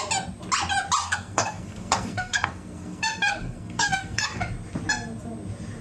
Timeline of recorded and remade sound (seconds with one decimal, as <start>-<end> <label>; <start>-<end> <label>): 0.0-1.0 recorded; 1.0-4.5 remade; 4.5-5.8 recorded